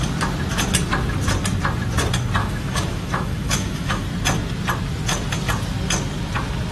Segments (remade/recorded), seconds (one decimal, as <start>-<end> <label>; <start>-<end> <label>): 0.0-2.4 recorded; 2.4-4.0 remade; 4.0-6.7 recorded